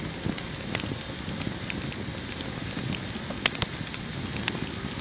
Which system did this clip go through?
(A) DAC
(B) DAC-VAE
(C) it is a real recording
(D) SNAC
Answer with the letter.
C